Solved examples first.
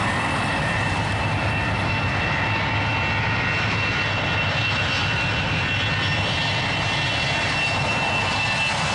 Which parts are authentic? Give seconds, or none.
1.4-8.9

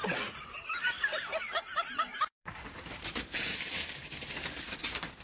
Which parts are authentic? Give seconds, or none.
0.0-1.5; 4.0-5.2